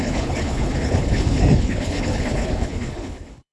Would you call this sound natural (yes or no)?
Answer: no